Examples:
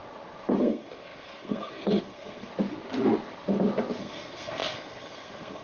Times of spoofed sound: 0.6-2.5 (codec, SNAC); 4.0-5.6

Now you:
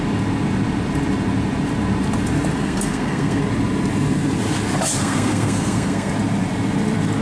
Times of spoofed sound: 2.6-3.4 (codec, SNAC); 5.0-6.1

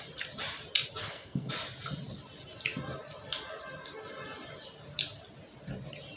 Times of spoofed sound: 1.0-1.5 (codec, SNAC)